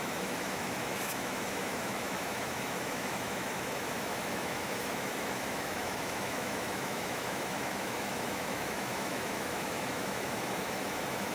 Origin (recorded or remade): remade